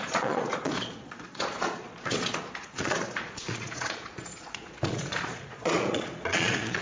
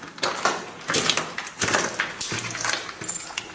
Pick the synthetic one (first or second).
first